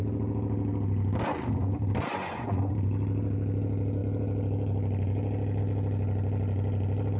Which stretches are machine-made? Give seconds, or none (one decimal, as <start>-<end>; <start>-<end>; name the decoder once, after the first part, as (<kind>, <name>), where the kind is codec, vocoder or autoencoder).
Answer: 2.1-2.6 (vocoder, Vocos)